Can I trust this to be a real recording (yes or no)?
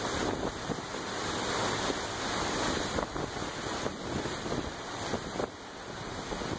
yes